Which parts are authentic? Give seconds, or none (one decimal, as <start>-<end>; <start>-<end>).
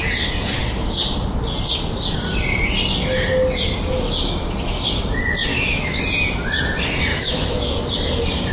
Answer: 0.0-5.5; 6.0-7.1; 7.8-8.5